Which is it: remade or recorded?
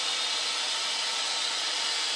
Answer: recorded